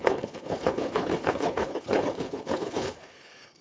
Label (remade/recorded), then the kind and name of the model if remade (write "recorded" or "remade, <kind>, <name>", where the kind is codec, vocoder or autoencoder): remade, codec, HILCodec